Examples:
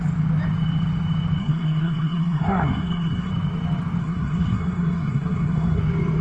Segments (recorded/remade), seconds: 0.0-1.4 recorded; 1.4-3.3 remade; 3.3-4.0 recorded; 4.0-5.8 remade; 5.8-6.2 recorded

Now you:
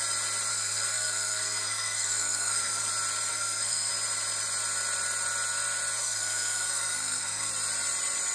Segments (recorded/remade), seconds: 0.0-0.5 recorded; 0.5-2.9 remade; 2.9-3.3 recorded; 3.3-3.9 remade; 3.9-6.0 recorded; 6.0-7.5 remade; 7.5-8.3 recorded